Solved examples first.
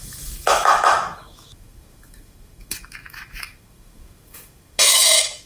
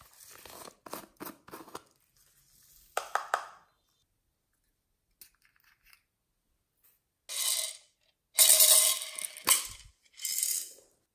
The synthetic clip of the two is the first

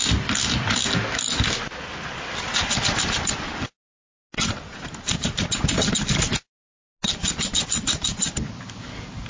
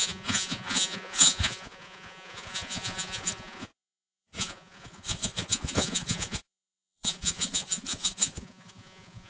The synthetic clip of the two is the second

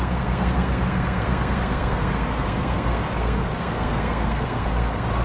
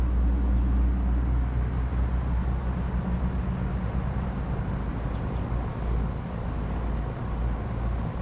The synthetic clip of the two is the first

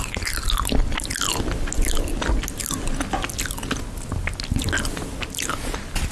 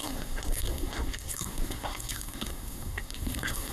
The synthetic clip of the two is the second